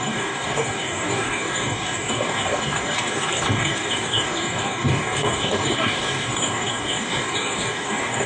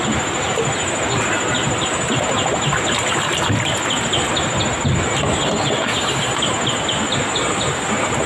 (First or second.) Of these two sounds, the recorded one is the second